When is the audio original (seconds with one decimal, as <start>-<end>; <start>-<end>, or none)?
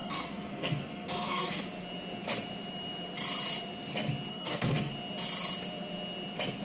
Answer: 1.6-4.3; 4.9-6.6